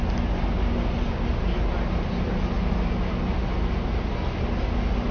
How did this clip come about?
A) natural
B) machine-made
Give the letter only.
A